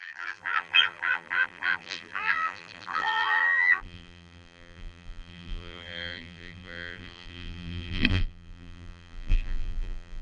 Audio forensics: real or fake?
fake